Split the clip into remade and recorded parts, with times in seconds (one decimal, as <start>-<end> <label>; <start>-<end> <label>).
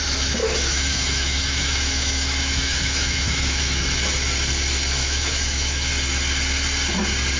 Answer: 0.0-0.4 recorded; 0.4-3.8 remade; 3.8-5.0 recorded; 5.0-5.9 remade; 5.9-7.4 recorded